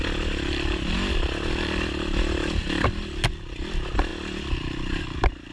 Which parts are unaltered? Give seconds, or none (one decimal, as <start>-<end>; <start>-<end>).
0.0-5.5